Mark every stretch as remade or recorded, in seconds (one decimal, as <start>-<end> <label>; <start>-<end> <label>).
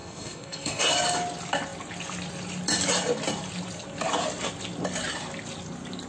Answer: 0.0-0.8 remade; 0.8-6.1 recorded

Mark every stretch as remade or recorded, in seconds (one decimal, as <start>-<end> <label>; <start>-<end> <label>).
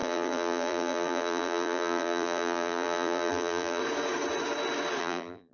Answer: 0.0-3.8 remade; 3.8-5.0 recorded; 5.0-5.5 remade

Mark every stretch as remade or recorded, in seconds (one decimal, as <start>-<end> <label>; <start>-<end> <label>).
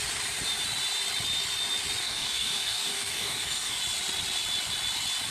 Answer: 0.0-2.0 recorded; 2.0-3.8 remade; 3.8-5.3 recorded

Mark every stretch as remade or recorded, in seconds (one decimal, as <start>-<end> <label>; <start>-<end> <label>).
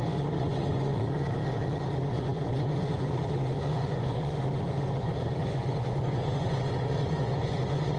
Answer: 0.0-0.9 remade; 0.9-1.9 recorded; 1.9-8.0 remade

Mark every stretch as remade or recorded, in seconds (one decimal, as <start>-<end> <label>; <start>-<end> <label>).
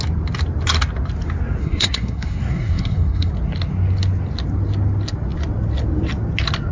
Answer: 0.0-1.6 recorded; 1.6-3.3 remade; 3.3-6.7 recorded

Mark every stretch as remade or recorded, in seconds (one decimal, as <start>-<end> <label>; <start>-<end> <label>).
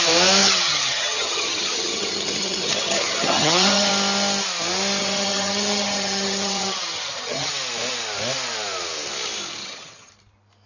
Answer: 0.0-0.4 recorded; 0.4-3.9 remade; 3.9-5.0 recorded; 5.0-7.5 remade; 7.5-9.6 recorded; 9.6-10.1 remade; 10.1-10.7 recorded